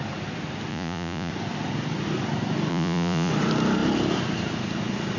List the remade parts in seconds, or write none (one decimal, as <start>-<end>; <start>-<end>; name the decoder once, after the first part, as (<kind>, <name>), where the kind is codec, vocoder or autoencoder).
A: 0.7-1.3 (vocoder, Vocos); 2.7-3.3